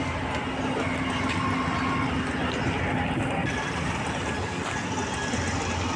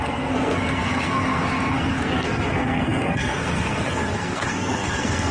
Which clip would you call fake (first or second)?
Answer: second